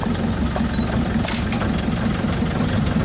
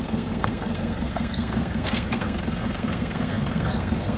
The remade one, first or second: second